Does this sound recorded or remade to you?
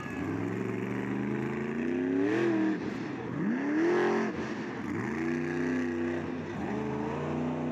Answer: recorded